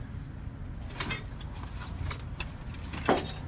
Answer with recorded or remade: recorded